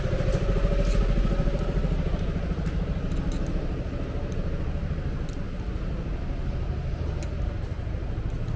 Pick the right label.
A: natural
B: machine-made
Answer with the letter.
A